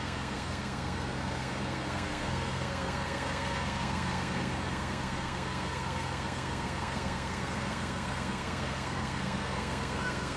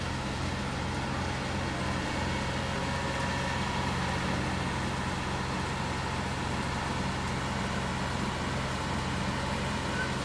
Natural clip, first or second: second